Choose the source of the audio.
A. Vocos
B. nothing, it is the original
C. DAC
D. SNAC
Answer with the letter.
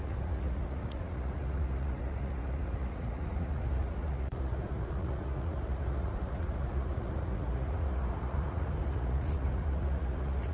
A